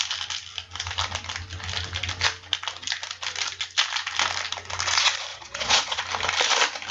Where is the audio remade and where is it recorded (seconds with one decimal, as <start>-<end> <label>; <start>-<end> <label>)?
0.0-5.3 recorded; 5.3-6.0 remade; 6.0-6.9 recorded